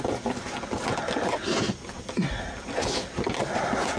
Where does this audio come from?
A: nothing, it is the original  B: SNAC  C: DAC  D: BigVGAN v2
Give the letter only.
A